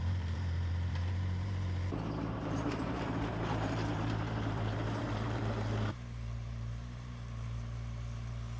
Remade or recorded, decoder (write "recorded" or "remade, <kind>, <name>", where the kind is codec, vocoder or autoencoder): remade, vocoder, BigVGAN v2